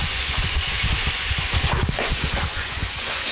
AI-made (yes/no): yes